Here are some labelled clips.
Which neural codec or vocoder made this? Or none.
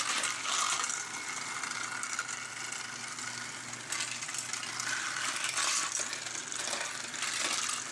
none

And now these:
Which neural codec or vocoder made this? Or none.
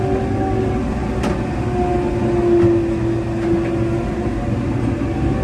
none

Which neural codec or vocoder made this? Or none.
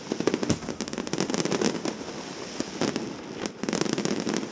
none